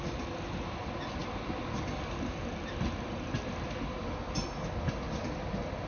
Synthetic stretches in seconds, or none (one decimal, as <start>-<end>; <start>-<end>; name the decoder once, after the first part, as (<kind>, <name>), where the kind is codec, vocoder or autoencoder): none